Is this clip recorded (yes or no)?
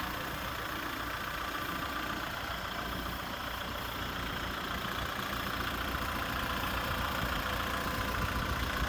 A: no